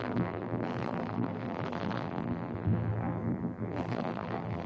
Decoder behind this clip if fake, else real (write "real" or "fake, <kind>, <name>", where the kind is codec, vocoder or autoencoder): fake, vocoder, BigVGAN v2